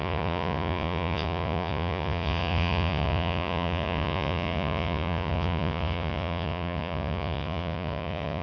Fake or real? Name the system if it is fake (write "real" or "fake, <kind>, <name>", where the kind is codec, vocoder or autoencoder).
fake, vocoder, Vocos